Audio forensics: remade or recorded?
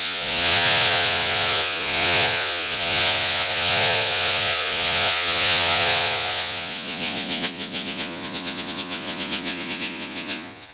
remade